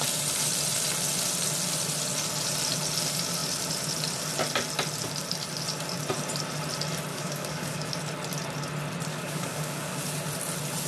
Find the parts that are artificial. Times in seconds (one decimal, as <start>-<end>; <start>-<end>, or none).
7.1-7.9; 9.1-10.0